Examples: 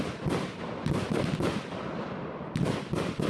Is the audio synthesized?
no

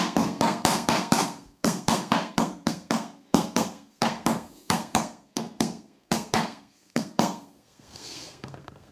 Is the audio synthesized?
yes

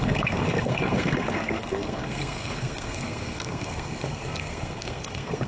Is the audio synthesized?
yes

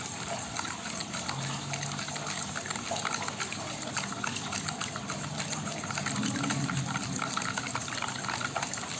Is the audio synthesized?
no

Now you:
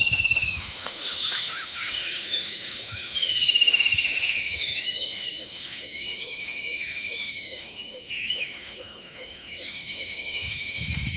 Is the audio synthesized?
yes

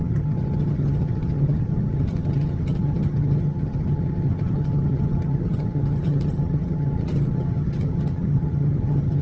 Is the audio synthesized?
yes